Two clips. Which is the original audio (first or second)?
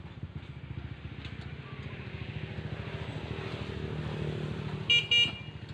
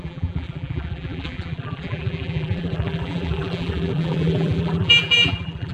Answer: first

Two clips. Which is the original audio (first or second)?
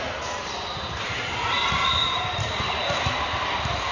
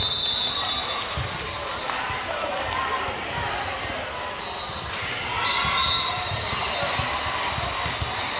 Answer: second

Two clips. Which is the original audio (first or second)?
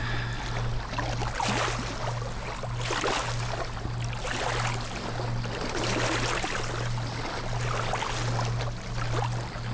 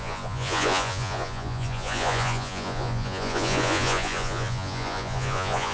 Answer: first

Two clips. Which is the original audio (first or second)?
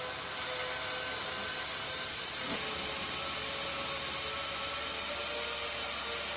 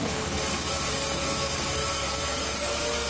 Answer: first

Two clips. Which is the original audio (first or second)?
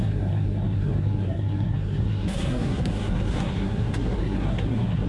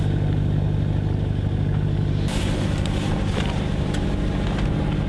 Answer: second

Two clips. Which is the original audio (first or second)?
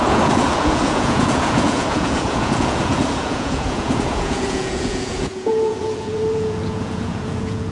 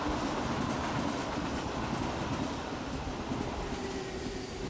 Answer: second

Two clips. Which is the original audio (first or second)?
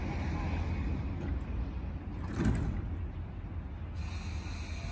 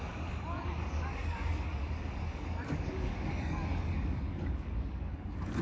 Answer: first